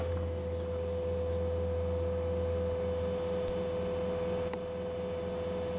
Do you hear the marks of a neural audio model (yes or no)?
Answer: no